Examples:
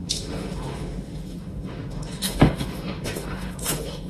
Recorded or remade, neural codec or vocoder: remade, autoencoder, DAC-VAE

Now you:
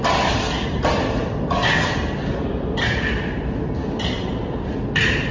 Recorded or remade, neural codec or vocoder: recorded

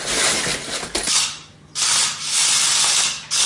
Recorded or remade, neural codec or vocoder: recorded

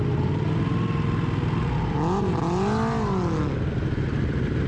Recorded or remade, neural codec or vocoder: recorded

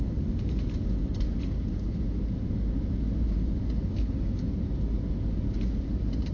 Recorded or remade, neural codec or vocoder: recorded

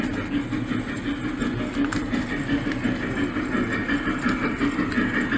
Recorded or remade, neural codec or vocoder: recorded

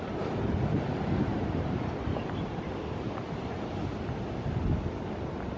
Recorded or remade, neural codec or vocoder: recorded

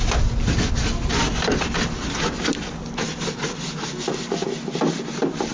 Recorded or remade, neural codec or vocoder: recorded